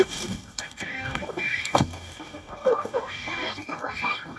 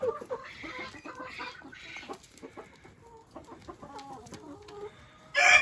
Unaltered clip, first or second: second